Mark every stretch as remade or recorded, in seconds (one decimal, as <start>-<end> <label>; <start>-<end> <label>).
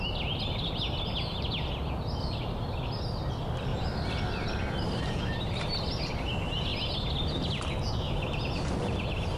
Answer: 0.0-3.7 recorded; 3.7-6.1 remade; 6.1-9.4 recorded